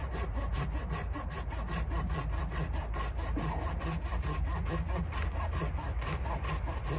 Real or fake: real